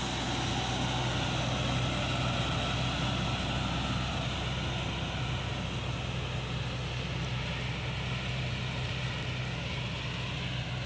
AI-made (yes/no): no